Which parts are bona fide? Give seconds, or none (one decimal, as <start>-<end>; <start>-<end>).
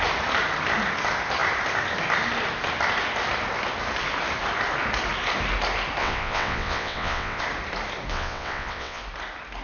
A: 0.0-6.0; 7.4-8.1; 9.0-9.6